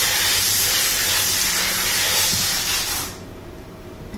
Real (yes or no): no